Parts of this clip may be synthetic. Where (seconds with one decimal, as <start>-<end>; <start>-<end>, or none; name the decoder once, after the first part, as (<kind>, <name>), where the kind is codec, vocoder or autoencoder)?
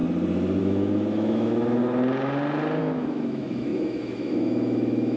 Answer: 0.6-1.8 (autoencoder, DAC-VAE); 2.8-5.2